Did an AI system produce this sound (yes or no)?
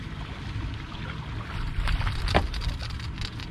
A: no